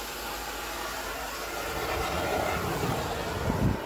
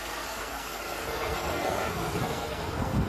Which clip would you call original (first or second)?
first